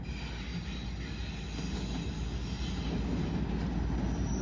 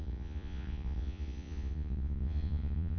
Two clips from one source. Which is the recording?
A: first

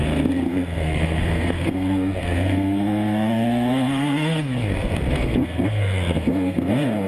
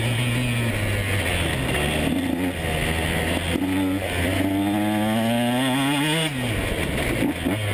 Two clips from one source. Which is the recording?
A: second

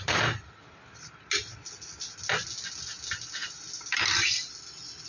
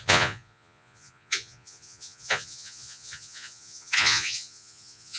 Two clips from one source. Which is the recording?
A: first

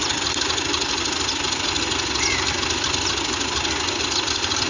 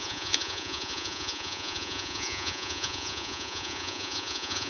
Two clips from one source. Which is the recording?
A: first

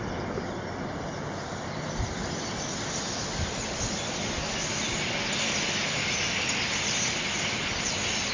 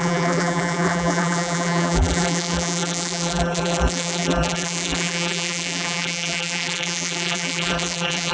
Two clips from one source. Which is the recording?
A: first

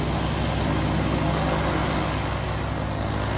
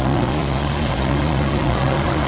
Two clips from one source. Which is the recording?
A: first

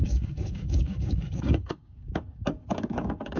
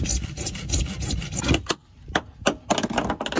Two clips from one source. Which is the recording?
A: second